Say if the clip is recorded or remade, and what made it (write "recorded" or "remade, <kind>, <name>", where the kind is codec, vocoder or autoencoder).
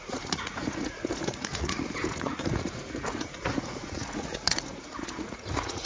remade, vocoder, Vocos